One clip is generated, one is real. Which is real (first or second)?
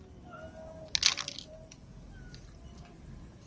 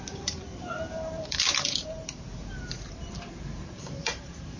first